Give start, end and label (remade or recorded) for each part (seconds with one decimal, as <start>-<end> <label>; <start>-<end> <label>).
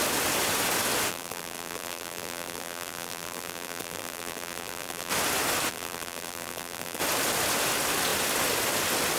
0.0-1.1 recorded; 1.1-5.1 remade; 5.1-5.7 recorded; 5.7-7.0 remade; 7.0-9.2 recorded